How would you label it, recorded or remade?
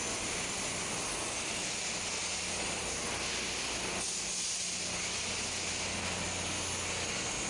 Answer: recorded